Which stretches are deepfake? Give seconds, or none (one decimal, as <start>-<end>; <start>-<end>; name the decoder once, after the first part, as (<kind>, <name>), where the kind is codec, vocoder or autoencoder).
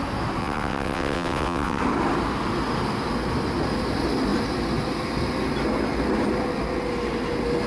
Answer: 0.4-1.8 (vocoder, WaveNeXt)